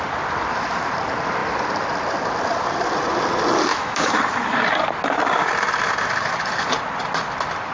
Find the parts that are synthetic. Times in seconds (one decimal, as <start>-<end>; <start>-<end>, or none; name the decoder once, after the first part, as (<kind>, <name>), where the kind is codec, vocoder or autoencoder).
3.7-4.2 (autoencoder, DAC-VAE)